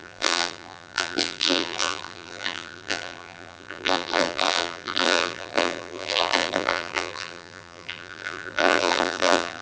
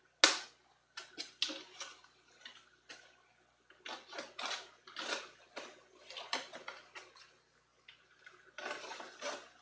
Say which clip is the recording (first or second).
second